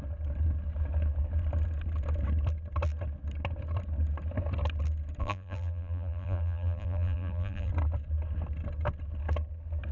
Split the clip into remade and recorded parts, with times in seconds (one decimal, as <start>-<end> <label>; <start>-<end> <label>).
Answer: 0.0-5.2 recorded; 5.2-7.7 remade; 7.7-9.9 recorded